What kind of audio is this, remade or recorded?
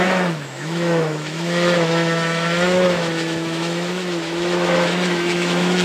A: remade